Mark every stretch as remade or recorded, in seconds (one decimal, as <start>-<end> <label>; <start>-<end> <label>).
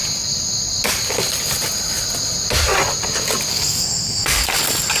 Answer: 0.0-3.5 recorded; 3.5-4.2 remade; 4.2-5.0 recorded